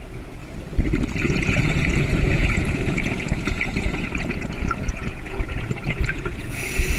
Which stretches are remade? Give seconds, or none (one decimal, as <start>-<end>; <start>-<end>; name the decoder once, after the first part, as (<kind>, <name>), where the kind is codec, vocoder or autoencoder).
0.0-0.4 (vocoder, Vocos); 1.2-7.0